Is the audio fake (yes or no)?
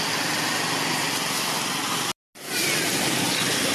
no